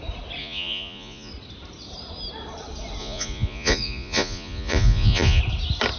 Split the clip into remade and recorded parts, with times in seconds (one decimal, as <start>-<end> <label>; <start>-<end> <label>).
0.0-0.4 recorded; 0.4-1.3 remade; 1.3-3.0 recorded; 3.0-5.4 remade; 5.4-6.0 recorded